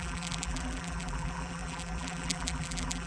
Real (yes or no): no